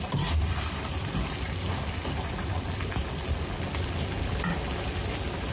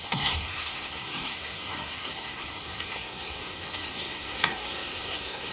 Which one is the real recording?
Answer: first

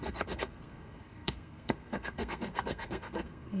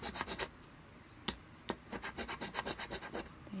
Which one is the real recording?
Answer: second